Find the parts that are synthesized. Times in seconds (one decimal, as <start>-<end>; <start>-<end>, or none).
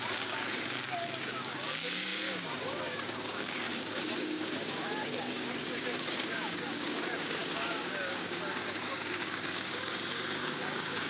0.0-11.1